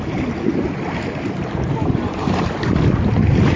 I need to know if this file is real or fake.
real